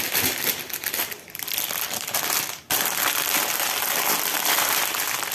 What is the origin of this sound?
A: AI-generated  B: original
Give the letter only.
A